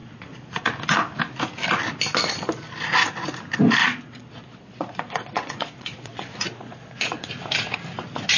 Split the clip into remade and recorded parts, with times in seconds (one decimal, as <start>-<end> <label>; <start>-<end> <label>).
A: 0.0-0.7 remade; 0.7-3.8 recorded; 3.8-7.3 remade; 7.3-8.4 recorded